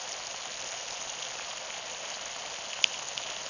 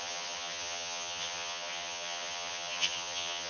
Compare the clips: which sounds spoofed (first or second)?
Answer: second